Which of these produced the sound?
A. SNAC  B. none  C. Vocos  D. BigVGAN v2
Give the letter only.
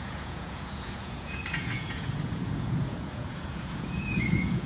C